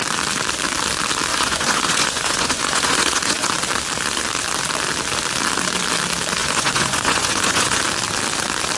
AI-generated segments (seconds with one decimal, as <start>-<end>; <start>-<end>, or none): 1.3-3.5; 6.4-7.8

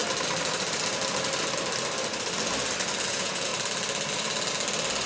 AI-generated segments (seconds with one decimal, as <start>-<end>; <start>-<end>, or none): 3.1-3.5

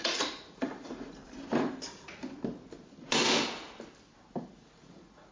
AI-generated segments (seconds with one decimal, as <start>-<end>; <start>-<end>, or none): 0.0-1.2; 4.4-5.3

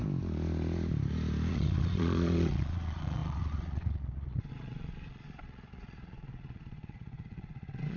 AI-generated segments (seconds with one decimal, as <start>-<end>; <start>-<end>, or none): 1.5-8.0

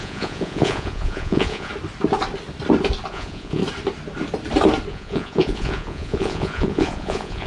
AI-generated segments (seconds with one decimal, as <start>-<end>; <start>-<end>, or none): 0.0-1.7; 3.1-3.6; 4.9-7.5